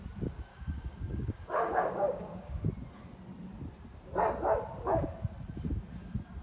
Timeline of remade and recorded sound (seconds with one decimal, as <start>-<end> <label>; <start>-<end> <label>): 0.0-0.5 recorded; 0.5-2.7 remade; 2.7-6.4 recorded